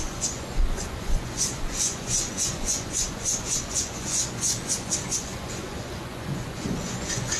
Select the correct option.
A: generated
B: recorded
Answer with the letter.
A